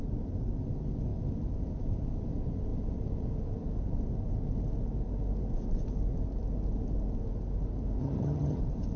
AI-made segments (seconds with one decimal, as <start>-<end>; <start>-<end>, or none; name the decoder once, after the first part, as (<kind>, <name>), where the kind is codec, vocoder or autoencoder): 8.0-8.6 (vocoder, HiFi-GAN)

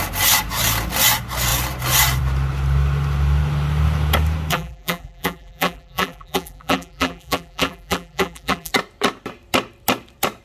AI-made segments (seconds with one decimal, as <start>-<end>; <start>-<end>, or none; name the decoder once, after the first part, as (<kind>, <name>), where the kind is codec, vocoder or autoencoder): 4.5-8.7 (vocoder, BigVGAN v2)

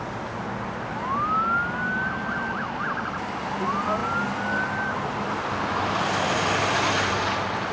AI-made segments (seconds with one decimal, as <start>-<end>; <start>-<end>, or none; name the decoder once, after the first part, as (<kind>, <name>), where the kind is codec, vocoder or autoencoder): none